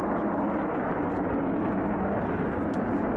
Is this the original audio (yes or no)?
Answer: yes